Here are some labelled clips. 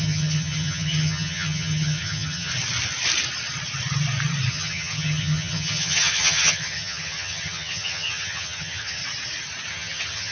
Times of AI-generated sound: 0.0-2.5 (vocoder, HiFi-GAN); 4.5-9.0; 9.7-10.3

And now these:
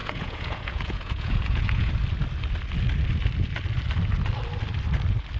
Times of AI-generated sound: 0.0-1.9 (vocoder, Vocos)